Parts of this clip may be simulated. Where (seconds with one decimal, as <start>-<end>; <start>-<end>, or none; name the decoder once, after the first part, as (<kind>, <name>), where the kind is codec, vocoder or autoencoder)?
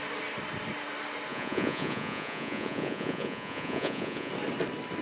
1.3-4.3 (vocoder, Vocos)